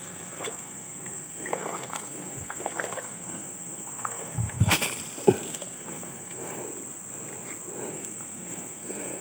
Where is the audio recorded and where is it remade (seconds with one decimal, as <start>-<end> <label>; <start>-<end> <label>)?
0.0-4.8 remade; 4.8-5.5 recorded; 5.5-6.6 remade; 6.6-7.9 recorded; 7.9-9.2 remade